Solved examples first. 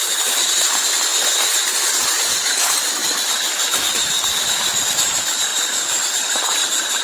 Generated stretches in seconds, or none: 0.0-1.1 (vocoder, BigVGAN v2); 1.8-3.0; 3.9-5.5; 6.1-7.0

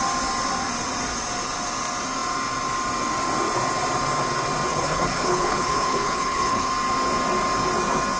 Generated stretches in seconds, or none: 4.7-6.7 (codec, HILCodec)

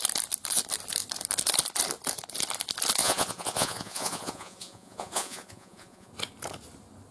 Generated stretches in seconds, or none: 3.0-6.1 (vocoder, Vocos)

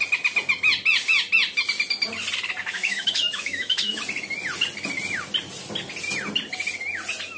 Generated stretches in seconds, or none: 2.6-4.0 (autoencoder, DAC-VAE)

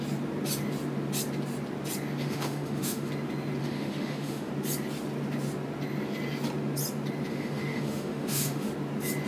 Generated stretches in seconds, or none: 2.2-3.1 (autoencoder, DAC-VAE); 3.6-4.5; 7.3-8.7

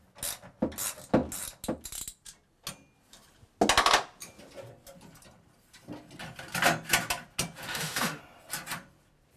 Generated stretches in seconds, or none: 7.7-8.2 (autoencoder, DAC-VAE)